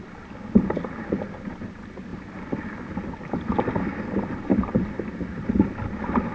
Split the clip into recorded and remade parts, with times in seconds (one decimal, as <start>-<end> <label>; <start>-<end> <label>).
0.0-2.1 recorded; 2.1-3.7 remade; 3.7-4.5 recorded; 4.5-5.0 remade; 5.0-6.3 recorded